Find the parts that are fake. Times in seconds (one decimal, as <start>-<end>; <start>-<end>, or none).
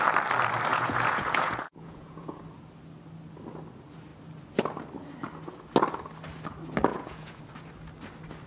0.7-2.4; 6.9-7.4